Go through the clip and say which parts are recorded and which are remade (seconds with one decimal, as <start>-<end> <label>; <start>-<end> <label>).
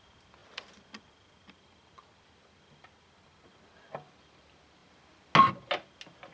0.0-6.3 recorded